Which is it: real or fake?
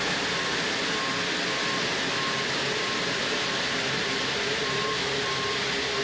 real